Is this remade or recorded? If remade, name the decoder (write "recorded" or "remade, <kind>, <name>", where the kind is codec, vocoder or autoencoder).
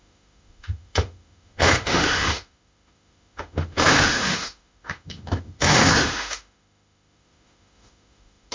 remade, autoencoder, DAC-VAE